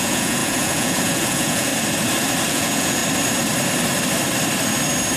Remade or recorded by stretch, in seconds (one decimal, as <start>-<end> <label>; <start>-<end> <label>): 0.0-1.7 remade; 1.7-2.5 recorded; 2.5-3.0 remade; 3.0-5.2 recorded